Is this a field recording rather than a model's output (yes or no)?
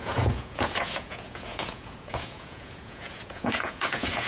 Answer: no